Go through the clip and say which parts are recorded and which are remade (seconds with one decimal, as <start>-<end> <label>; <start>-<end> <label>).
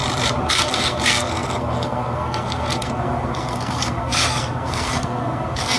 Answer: 0.0-0.5 recorded; 0.5-5.8 remade